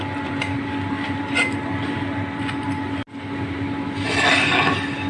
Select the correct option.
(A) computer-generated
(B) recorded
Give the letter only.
B